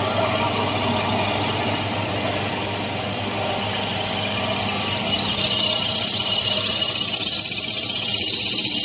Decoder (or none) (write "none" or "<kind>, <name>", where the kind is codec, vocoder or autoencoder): none